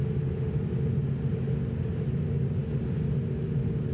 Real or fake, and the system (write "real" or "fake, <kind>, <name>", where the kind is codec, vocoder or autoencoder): real